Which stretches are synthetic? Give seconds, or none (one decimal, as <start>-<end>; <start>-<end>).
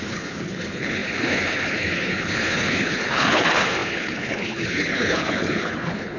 0.0-6.2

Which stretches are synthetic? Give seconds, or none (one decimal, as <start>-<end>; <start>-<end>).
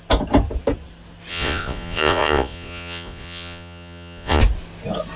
1.3-4.4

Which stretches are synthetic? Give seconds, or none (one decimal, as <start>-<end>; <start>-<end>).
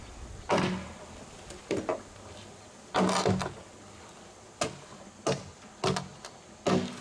none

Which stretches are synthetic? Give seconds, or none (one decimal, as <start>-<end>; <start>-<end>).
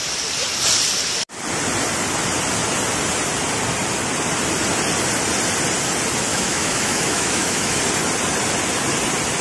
6.3-7.8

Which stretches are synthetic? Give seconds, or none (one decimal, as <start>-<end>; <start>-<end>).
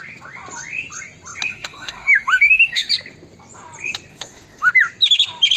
1.5-2.9; 4.1-4.7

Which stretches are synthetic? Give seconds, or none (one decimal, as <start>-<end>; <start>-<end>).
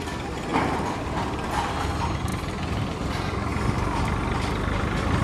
0.5-1.5; 3.5-4.2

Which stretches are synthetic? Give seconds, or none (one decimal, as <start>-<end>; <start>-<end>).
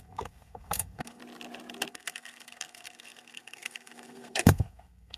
0.0-1.2; 1.9-5.2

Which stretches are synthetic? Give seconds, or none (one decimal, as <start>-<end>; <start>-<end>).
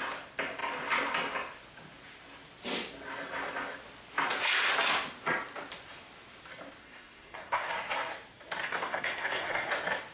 6.8-7.7; 8.6-9.7